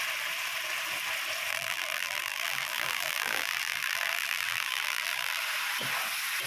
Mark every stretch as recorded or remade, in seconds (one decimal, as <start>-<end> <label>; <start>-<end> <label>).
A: 0.0-1.5 recorded; 1.5-5.4 remade; 5.4-6.5 recorded